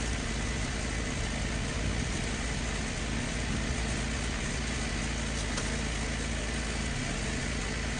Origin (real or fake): real